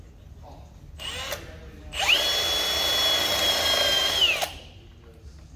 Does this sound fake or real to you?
real